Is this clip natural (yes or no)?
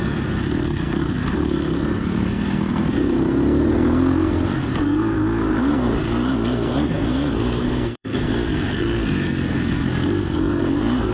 no